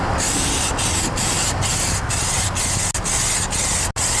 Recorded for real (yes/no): yes